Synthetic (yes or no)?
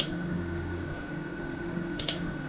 yes